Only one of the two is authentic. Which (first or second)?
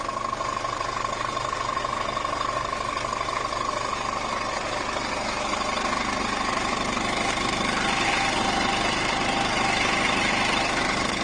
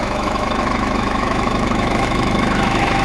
first